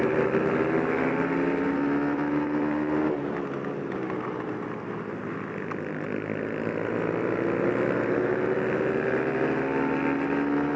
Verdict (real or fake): real